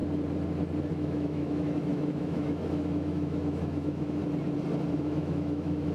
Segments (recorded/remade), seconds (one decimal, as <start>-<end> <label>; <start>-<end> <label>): 0.0-0.9 recorded; 0.9-4.2 remade; 4.2-4.9 recorded; 4.9-5.9 remade